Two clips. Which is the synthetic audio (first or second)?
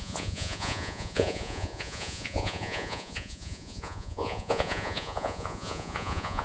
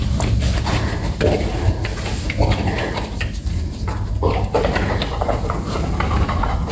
first